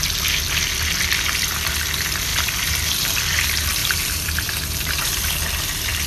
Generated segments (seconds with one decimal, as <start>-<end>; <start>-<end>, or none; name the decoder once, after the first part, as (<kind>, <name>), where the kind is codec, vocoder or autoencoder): 3.8-5.2 (vocoder, BigVGAN v2)